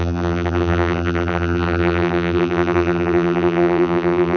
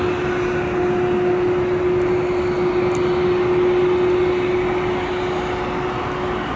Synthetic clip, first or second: first